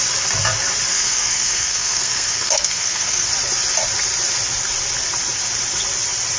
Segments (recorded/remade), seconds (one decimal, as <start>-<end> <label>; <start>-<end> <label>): 0.0-0.9 recorded; 0.9-3.3 remade; 3.3-6.4 recorded